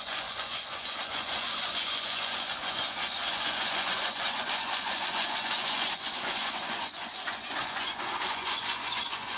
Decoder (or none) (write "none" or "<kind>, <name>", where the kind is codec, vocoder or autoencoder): vocoder, Vocos